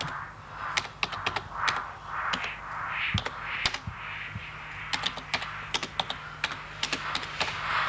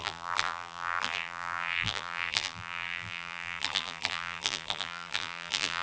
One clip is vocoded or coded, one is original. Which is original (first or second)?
first